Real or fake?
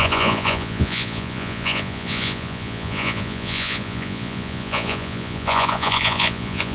fake